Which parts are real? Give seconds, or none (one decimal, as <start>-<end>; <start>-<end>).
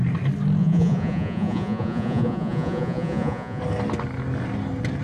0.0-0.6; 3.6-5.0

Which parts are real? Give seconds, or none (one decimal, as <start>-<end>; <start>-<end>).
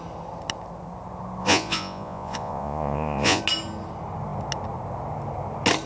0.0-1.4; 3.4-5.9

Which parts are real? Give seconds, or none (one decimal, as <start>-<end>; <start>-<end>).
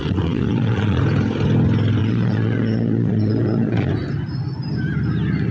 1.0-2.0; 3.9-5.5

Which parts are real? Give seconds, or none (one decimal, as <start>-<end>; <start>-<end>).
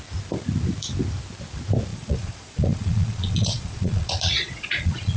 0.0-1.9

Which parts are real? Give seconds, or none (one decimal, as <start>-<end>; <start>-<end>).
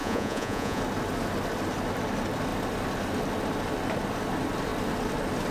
0.8-5.5